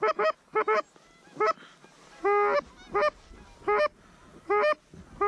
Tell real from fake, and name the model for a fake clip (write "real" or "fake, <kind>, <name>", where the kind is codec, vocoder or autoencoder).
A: real